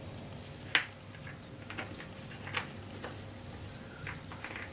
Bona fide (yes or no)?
yes